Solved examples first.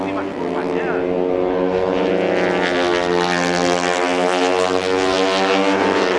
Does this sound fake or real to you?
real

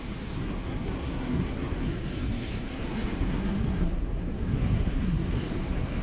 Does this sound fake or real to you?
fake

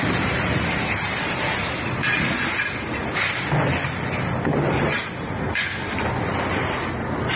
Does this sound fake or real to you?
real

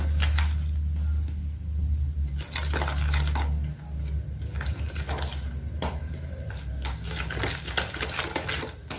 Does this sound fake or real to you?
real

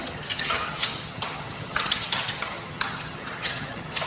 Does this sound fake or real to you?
fake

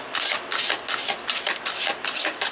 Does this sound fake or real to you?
real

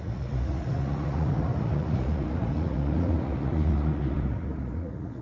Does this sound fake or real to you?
fake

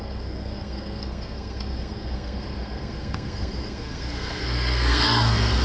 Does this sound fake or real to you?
fake